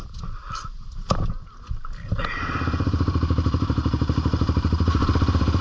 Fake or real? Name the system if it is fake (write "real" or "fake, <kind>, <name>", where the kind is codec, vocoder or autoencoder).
fake, vocoder, BigVGAN v2